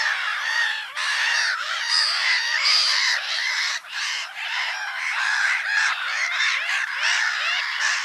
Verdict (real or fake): fake